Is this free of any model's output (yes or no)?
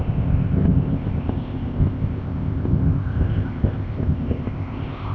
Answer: no